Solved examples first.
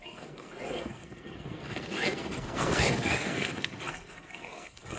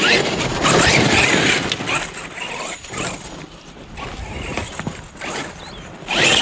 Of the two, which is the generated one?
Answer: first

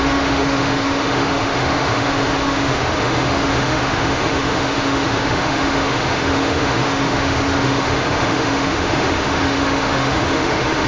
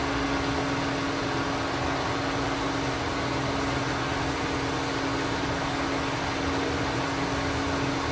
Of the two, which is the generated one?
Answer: first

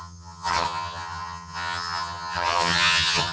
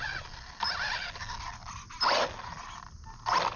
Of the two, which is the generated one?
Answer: first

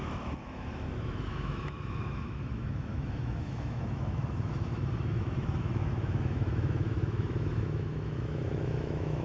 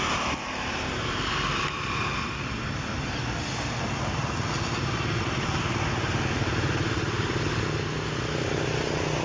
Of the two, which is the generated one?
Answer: first